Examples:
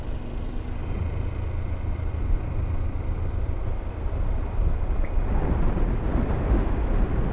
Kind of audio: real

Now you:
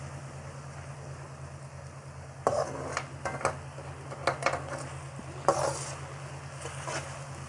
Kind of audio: real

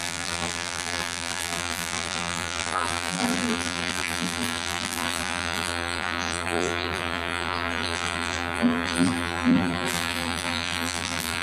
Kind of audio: fake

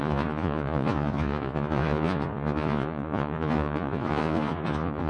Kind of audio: fake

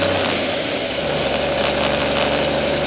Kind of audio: real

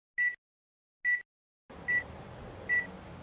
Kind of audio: real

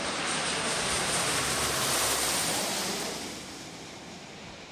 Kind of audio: fake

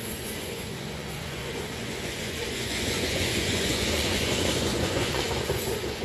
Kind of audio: fake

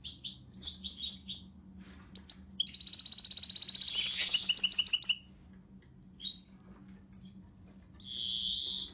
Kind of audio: real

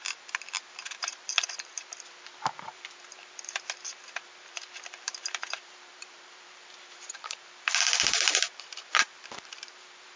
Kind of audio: fake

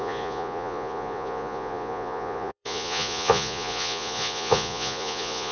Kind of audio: fake